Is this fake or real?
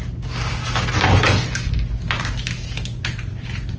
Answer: real